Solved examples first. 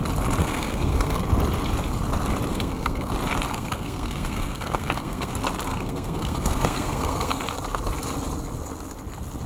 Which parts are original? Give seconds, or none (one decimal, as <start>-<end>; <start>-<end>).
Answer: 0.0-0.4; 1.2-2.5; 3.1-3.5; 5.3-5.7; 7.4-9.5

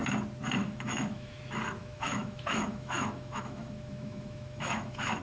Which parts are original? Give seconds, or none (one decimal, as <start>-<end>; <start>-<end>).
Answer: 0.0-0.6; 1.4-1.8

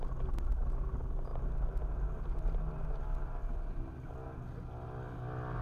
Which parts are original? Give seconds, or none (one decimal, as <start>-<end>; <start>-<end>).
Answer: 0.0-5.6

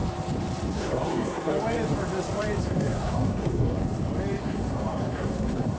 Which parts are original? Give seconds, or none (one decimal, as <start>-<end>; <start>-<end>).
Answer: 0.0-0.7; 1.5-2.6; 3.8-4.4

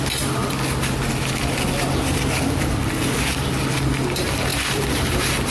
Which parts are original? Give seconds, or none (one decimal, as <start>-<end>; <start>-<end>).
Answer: 0.0-4.5

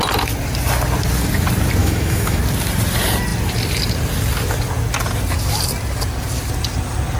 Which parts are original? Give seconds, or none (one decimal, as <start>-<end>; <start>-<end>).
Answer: 0.0-1.8; 2.4-7.2

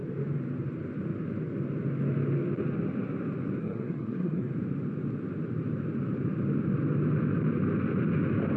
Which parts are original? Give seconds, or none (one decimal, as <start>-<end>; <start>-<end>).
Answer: 0.0-3.6; 4.5-8.6